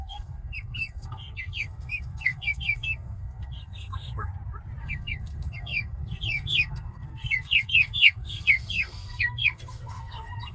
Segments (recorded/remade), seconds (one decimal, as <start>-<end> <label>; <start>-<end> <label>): 0.0-4.3 remade; 4.3-4.8 recorded; 4.8-10.5 remade